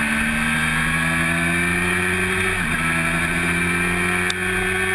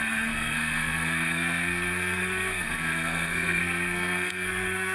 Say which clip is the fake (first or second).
second